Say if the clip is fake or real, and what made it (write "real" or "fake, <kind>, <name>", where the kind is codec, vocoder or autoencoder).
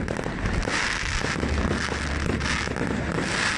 real